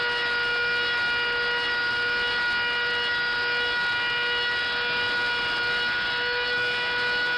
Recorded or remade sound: recorded